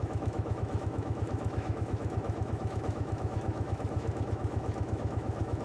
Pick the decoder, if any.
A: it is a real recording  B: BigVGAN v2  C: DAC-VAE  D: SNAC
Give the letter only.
C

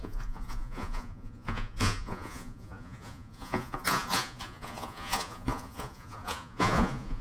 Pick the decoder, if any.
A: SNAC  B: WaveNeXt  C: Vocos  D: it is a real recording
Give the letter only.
C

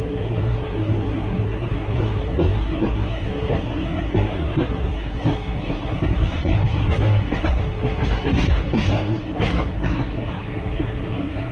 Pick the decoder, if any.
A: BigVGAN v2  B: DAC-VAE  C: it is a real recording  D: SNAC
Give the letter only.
D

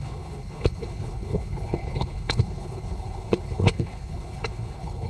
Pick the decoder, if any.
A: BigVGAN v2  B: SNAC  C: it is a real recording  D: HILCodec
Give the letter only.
D